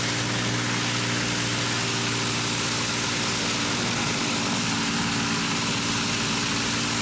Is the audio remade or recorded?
recorded